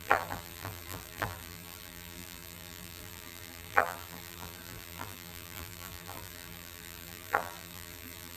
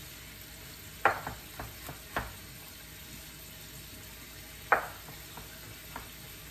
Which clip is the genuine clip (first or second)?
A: second